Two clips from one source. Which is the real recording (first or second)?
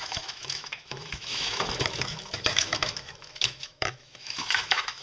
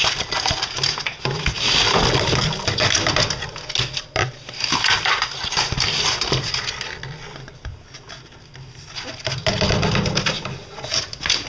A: second